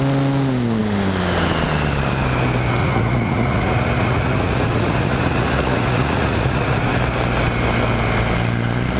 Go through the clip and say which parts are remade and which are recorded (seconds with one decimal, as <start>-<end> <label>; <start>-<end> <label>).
0.0-2.8 recorded; 2.8-6.9 remade; 6.9-9.0 recorded